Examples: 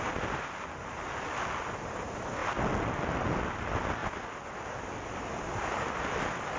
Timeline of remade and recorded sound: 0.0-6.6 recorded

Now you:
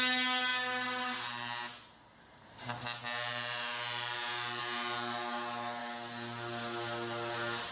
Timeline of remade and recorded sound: 0.0-7.7 recorded

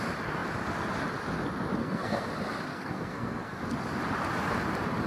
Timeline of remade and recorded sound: 0.0-1.8 recorded; 1.8-2.3 remade; 2.3-2.7 recorded; 2.7-3.6 remade; 3.6-5.1 recorded

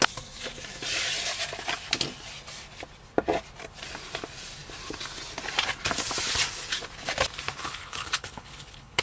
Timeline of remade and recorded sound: 0.0-7.6 recorded; 7.6-9.0 remade